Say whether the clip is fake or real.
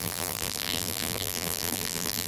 fake